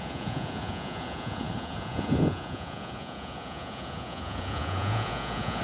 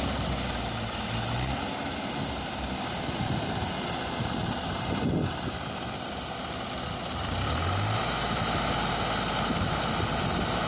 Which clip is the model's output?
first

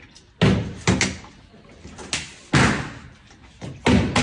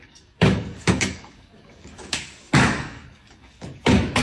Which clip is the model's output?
second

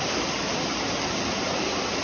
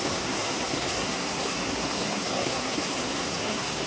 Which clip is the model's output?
second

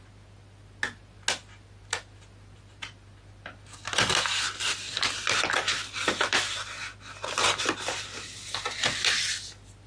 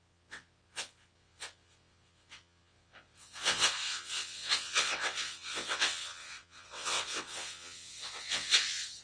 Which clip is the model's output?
second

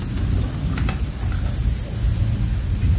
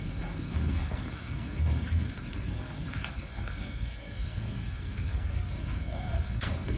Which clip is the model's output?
second